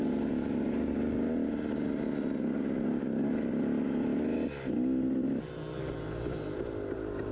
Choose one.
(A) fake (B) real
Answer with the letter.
B